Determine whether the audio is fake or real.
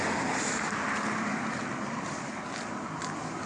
real